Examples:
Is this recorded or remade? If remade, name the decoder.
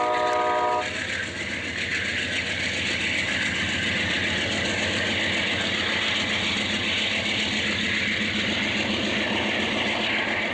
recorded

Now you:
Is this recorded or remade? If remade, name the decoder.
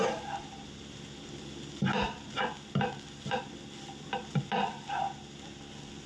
recorded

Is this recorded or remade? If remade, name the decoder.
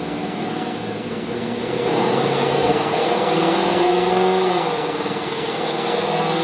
remade, codec, SNAC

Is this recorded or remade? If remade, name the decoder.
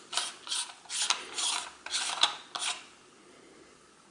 recorded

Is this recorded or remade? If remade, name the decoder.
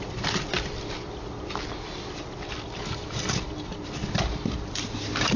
recorded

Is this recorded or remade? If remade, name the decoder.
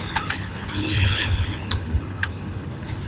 remade, codec, HILCodec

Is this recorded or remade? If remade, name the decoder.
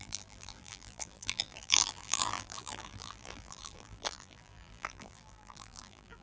remade, vocoder, BigVGAN v2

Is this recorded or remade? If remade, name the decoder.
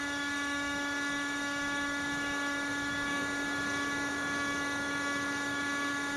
remade, autoencoder, DAC-VAE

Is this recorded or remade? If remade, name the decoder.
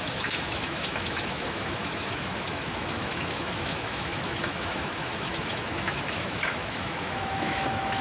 remade, autoencoder, DAC-VAE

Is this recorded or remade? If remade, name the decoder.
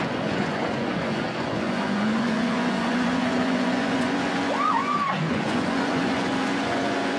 remade, vocoder, Vocos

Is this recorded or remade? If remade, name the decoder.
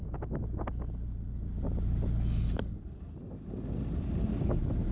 recorded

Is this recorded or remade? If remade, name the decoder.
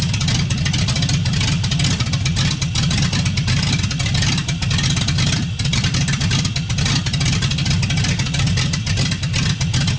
recorded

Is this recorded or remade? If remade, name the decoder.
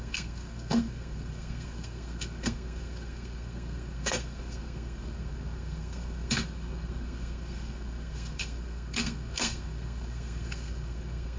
remade, codec, SNAC